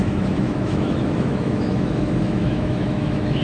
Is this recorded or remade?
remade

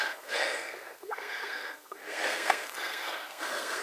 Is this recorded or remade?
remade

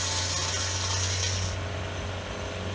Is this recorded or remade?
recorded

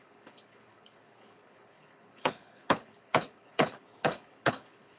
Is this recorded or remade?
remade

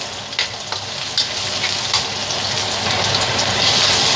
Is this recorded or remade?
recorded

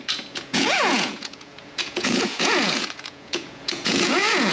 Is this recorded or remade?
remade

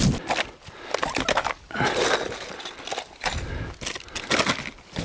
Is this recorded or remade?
recorded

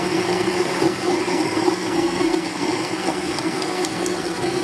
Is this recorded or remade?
remade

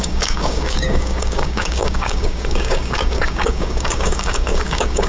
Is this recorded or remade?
remade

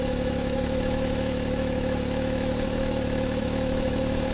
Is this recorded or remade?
remade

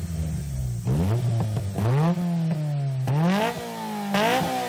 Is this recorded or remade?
recorded